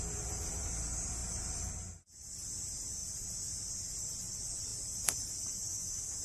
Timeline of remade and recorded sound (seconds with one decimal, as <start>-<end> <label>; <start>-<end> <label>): 0.0-6.2 recorded